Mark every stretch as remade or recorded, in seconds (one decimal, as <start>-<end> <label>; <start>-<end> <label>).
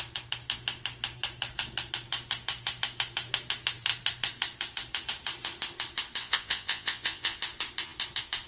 0.0-6.2 recorded; 6.2-7.4 remade; 7.4-8.5 recorded